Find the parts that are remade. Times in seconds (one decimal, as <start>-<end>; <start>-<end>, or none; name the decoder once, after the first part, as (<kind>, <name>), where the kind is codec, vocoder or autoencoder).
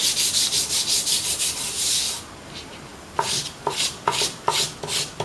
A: 0.0-2.0 (vocoder, BigVGAN v2); 2.9-4.8